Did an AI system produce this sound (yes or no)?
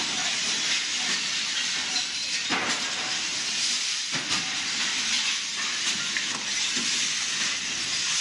no